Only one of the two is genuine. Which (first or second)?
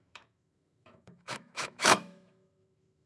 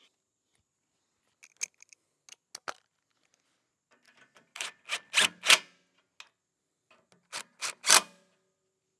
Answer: second